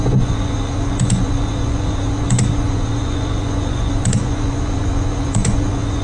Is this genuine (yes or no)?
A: no